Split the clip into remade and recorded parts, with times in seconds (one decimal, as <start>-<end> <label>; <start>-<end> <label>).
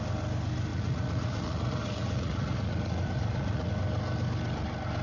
0.0-0.7 recorded; 0.7-3.7 remade; 3.7-5.0 recorded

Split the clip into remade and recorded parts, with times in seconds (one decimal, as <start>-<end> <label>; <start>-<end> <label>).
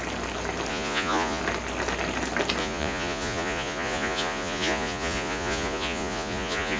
0.0-0.7 recorded; 0.7-1.4 remade; 1.4-2.6 recorded; 2.6-6.8 remade